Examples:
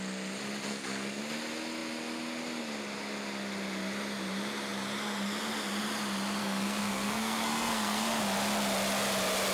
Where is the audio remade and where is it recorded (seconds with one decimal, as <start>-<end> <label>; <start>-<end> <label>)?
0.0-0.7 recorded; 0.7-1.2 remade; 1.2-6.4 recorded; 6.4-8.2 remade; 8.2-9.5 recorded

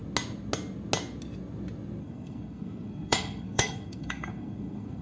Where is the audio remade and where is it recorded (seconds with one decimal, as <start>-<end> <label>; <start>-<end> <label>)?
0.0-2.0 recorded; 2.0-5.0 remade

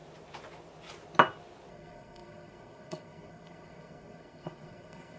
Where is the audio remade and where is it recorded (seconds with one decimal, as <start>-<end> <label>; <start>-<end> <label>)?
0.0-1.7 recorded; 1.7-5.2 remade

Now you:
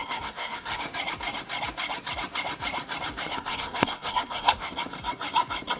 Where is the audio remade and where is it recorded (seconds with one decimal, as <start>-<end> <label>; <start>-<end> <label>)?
0.0-0.8 remade; 0.8-3.3 recorded; 3.3-4.7 remade; 4.7-5.8 recorded